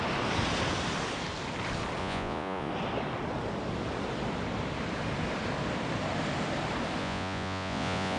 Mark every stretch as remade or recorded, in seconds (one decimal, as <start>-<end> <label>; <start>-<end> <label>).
0.0-2.0 recorded; 2.0-2.7 remade; 2.7-7.0 recorded; 7.0-8.2 remade

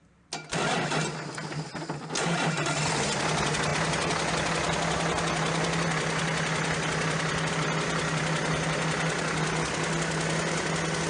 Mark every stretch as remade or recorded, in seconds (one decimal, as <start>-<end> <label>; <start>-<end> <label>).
0.0-11.1 recorded

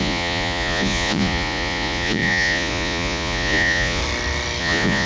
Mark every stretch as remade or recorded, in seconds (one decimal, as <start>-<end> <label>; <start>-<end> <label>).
0.0-4.0 remade; 4.0-4.6 recorded; 4.6-5.1 remade

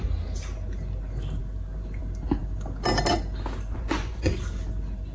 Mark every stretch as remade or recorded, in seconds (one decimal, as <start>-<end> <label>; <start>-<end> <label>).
0.0-3.7 recorded; 3.7-4.3 remade; 4.3-5.1 recorded